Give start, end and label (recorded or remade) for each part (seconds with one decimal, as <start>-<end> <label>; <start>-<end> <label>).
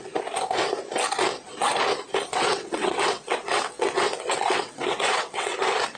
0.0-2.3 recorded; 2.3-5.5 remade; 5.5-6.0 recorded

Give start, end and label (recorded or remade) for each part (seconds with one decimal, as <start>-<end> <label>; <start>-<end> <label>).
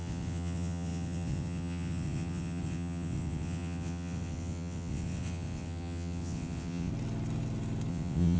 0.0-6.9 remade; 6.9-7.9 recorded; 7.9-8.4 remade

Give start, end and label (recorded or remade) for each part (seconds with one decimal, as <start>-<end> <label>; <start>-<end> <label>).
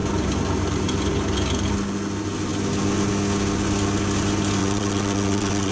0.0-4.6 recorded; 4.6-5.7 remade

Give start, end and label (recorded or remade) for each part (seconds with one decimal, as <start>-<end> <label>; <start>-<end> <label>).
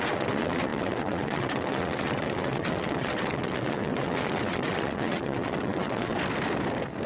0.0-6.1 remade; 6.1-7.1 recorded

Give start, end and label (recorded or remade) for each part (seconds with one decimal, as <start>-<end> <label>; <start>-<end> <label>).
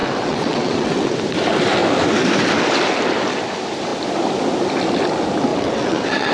0.0-1.2 remade; 1.2-5.5 recorded; 5.5-6.3 remade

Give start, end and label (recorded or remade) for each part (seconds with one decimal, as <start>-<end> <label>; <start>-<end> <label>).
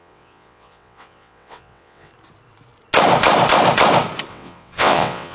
0.0-2.1 remade; 2.1-4.3 recorded; 4.3-5.3 remade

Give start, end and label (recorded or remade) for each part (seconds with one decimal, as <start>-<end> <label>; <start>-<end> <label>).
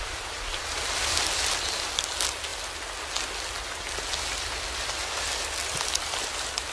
0.0-6.7 recorded